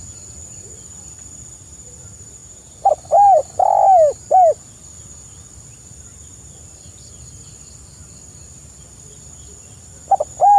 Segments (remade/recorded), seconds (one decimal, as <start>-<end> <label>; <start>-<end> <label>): 0.0-2.4 recorded; 2.4-2.9 remade; 2.9-10.6 recorded

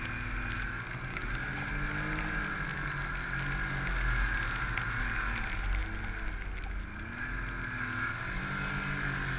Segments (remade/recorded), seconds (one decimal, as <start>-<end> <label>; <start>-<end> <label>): 0.0-1.1 recorded; 1.1-1.7 remade; 1.7-9.4 recorded

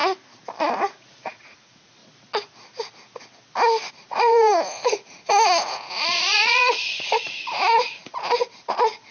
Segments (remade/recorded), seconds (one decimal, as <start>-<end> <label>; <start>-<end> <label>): 0.0-0.6 recorded; 0.6-2.0 remade; 2.0-3.9 recorded; 3.9-9.1 remade

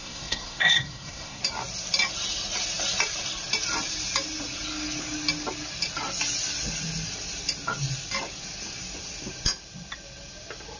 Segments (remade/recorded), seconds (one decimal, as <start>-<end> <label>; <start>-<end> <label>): 0.0-1.4 remade; 1.4-10.8 recorded